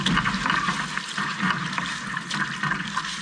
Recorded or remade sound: recorded